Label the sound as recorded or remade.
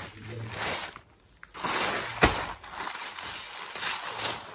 recorded